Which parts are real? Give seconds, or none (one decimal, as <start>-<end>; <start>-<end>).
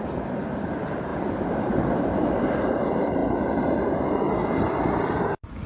3.2-4.5